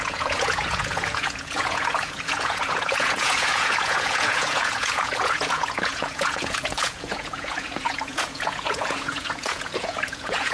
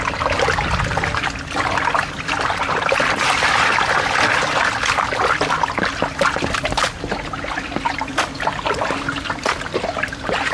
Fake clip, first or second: first